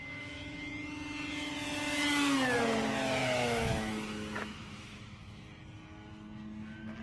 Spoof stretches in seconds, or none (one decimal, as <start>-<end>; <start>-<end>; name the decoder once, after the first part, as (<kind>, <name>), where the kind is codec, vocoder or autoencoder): 0.0-0.7 (autoencoder, DAC-VAE); 3.2-5.4